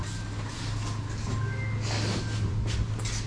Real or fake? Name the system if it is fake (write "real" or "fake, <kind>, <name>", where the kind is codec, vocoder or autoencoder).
real